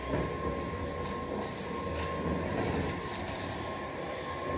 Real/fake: real